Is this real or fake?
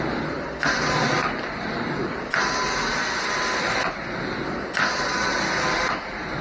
real